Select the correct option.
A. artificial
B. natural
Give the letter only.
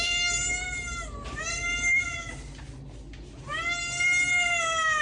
B